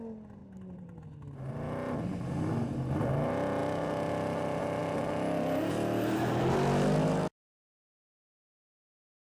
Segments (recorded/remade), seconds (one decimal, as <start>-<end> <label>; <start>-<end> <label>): 0.0-0.4 recorded; 0.4-1.0 remade; 1.0-9.2 recorded